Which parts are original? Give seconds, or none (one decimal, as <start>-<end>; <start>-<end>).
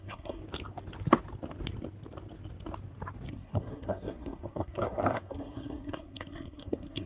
0.4-3.3